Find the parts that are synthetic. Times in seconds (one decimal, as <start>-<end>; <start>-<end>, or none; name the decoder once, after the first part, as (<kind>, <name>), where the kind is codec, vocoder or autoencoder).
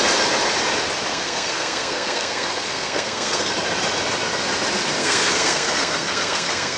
1.1-3.5 (codec, SNAC); 5.0-6.8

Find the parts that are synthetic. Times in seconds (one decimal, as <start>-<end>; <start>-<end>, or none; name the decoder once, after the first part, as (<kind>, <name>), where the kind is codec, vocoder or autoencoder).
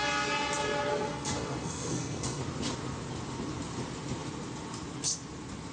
0.9-2.4 (codec, SNAC)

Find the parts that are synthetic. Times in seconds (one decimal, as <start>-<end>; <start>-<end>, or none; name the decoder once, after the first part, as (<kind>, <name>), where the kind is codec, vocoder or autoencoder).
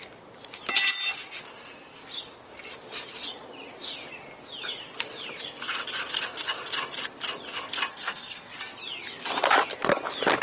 7.9-8.5 (codec, SNAC)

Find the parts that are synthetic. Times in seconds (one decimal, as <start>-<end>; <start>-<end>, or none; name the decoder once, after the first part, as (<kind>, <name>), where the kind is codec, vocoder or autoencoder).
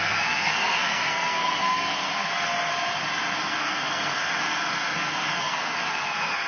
0.0-2.7 (codec, SNAC); 3.4-6.5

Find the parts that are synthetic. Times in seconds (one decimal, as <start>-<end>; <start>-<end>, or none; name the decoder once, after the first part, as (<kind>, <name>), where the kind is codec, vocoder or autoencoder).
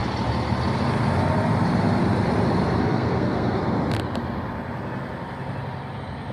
2.8-3.6 (codec, SNAC)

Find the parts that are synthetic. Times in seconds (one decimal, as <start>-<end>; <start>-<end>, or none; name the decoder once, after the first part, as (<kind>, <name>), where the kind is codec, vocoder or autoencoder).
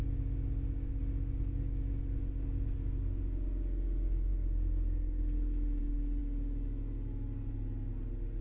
none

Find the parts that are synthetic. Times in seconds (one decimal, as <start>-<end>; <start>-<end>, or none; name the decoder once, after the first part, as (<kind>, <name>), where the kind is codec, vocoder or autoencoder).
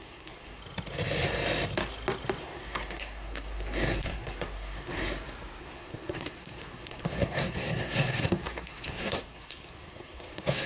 0.0-0.6 (codec, SNAC); 2.4-5.1; 5.6-10.7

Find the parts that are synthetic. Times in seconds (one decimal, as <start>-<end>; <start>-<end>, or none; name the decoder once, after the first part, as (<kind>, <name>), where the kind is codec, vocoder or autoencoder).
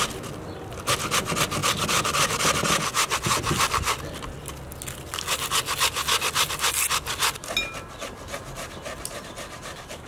none